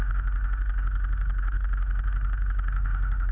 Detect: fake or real fake